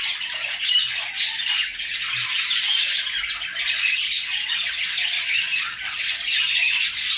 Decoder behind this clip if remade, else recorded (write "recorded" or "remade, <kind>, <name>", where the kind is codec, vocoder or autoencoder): recorded